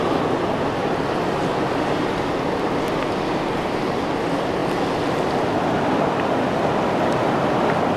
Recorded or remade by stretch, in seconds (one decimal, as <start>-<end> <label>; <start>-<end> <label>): 0.0-7.2 recorded; 7.2-8.0 remade